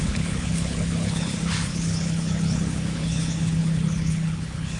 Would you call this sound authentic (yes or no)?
no